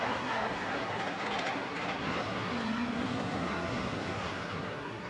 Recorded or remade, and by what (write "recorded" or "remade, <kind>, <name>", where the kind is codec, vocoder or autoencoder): remade, codec, SNAC